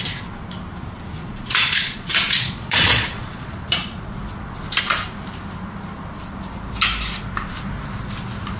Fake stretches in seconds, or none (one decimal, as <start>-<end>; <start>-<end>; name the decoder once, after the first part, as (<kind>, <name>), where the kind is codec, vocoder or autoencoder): 1.2-4.8 (vocoder, Vocos)